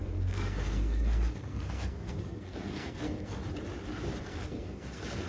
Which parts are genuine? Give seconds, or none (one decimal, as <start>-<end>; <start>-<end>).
3.4-4.2